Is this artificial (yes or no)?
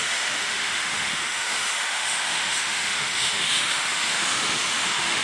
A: yes